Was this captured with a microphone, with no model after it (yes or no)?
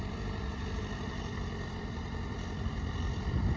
no